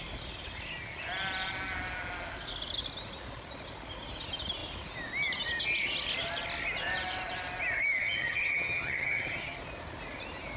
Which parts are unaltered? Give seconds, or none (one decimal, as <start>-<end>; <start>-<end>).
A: 0.0-8.0; 9.6-10.6